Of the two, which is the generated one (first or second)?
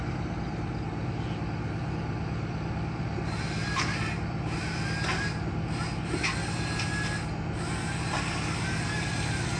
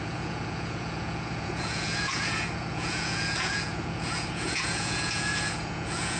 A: second